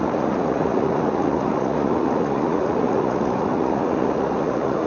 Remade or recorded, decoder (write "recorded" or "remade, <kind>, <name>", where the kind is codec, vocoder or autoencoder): remade, vocoder, Vocos